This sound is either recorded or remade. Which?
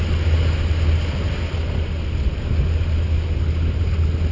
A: recorded